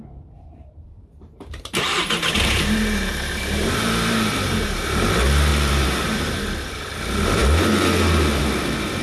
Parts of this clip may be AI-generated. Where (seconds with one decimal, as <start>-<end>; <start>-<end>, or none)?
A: 0.0-5.0; 5.5-6.9